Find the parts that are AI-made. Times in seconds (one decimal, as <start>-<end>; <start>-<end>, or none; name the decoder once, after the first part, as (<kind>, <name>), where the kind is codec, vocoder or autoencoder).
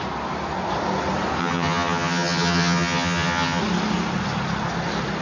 1.4-3.6 (vocoder, HiFi-GAN)